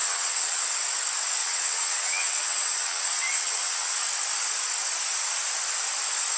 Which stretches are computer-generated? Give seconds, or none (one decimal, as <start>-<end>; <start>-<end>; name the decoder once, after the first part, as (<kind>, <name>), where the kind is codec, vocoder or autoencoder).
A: 0.0-0.6 (vocoder, WaveNeXt); 1.4-4.0